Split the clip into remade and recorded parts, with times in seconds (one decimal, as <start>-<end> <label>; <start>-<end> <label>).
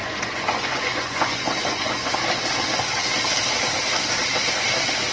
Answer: 0.0-2.1 remade; 2.1-5.1 recorded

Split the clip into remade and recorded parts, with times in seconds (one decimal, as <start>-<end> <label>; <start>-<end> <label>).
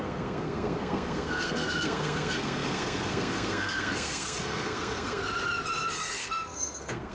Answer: 0.0-5.2 remade; 5.2-6.0 recorded; 6.0-7.1 remade